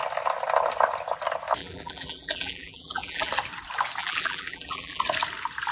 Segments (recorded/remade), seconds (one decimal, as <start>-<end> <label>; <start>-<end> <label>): 0.0-1.6 recorded; 1.6-3.3 remade; 3.3-4.0 recorded; 4.0-5.0 remade; 5.0-5.7 recorded

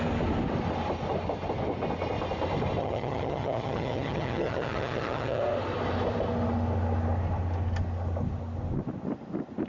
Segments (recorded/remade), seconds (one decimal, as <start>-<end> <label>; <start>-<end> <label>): 0.0-2.8 recorded; 2.8-5.4 remade; 5.4-9.7 recorded

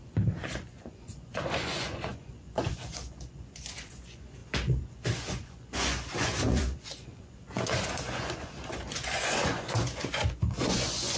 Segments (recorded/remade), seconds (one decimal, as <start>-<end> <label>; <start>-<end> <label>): 0.0-11.2 remade

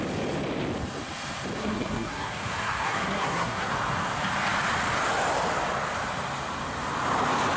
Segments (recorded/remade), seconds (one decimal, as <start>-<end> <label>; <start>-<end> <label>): 0.0-1.6 recorded; 1.6-3.7 remade; 3.7-7.6 recorded

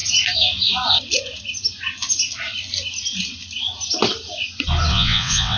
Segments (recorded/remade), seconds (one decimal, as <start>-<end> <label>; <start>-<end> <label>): 0.0-4.9 recorded; 4.9-5.6 remade